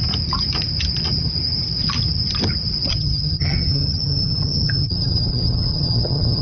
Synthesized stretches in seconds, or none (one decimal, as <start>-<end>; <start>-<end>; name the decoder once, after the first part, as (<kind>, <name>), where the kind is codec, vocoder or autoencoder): 2.9-6.4 (vocoder, HiFi-GAN)